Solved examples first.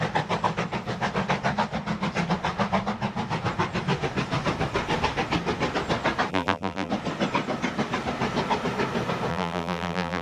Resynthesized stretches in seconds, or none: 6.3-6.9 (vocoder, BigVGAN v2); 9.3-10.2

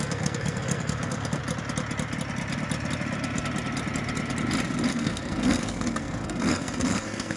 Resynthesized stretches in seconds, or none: 0.0-1.4 (codec, SNAC); 4.9-7.4

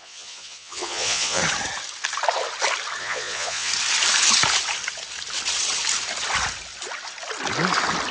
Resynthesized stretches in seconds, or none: 0.0-1.4 (vocoder, Vocos); 3.0-3.7

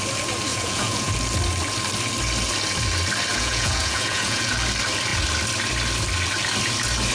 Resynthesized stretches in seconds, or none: 0.5-1.1 (vocoder, Vocos); 3.3-4.5

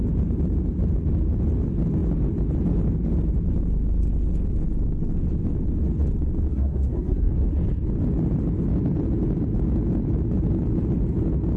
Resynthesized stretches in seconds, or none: 6.5-7.3 (codec, SNAC)

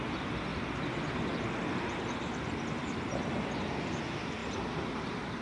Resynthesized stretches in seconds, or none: none

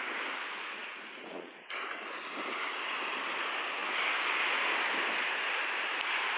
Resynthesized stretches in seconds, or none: 0.8-1.7 (vocoder, Vocos)